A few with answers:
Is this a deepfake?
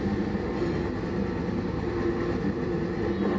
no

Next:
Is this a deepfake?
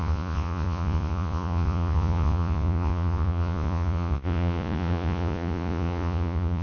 yes